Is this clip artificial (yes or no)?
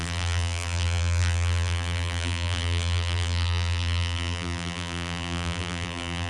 yes